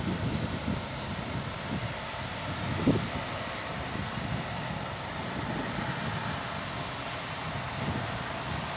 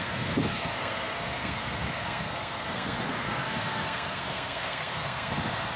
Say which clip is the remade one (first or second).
second